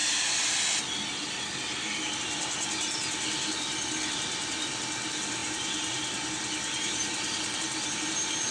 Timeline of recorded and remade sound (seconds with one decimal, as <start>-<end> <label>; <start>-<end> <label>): 0.0-8.5 recorded